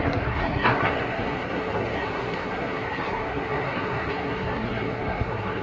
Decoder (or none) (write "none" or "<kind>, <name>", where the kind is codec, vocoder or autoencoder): codec, SNAC